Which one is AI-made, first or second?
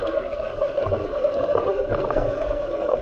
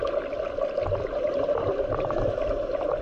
first